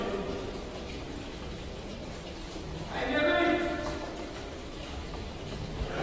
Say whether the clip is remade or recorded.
recorded